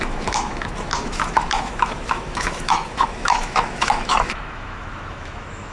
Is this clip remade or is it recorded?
remade